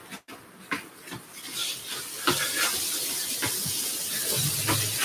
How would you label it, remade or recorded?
recorded